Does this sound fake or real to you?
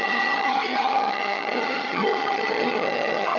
fake